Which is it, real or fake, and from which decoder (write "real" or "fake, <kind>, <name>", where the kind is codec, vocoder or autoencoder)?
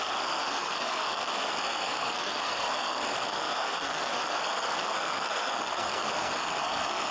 fake, codec, SNAC